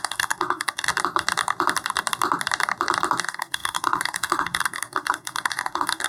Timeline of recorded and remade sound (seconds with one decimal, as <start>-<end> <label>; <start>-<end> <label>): 0.0-0.9 remade; 0.9-3.2 recorded; 3.2-6.1 remade